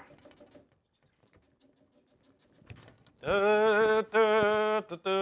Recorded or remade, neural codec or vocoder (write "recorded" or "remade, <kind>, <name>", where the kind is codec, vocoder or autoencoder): recorded